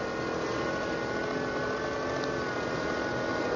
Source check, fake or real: real